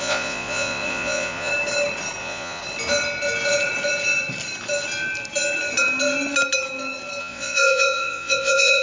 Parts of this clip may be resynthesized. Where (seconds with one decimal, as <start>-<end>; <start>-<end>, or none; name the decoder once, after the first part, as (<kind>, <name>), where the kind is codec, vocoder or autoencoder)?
0.0-1.5 (vocoder, Vocos); 2.2-2.6; 7.2-8.8